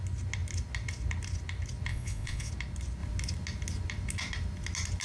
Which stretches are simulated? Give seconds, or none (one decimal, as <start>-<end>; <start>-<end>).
1.9-2.5